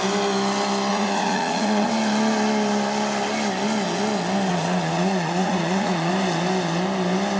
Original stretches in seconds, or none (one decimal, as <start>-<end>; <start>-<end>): 0.0-0.9; 1.9-4.5; 6.1-7.4